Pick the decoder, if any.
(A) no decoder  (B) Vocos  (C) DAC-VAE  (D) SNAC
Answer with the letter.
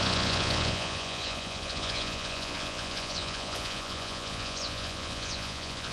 B